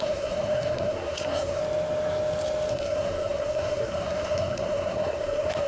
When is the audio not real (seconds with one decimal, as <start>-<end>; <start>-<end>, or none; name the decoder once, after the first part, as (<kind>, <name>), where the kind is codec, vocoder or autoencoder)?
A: 0.0-1.6 (codec, SNAC); 2.7-5.7